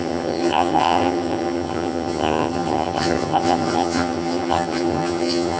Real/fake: fake